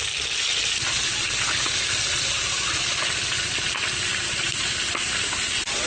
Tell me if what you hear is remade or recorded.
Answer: recorded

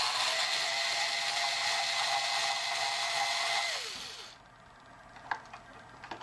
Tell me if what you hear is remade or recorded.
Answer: recorded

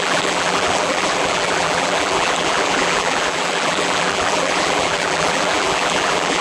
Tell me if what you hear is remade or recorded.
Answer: remade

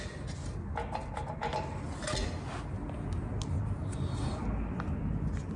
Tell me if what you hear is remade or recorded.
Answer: recorded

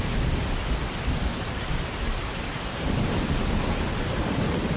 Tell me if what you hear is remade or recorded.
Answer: recorded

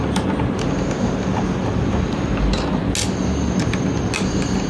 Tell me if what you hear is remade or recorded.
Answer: recorded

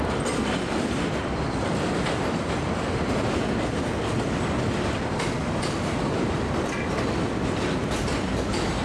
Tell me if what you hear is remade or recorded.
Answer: recorded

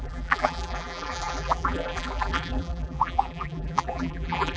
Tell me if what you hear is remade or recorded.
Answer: remade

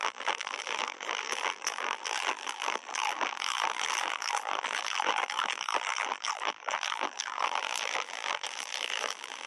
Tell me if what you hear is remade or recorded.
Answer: remade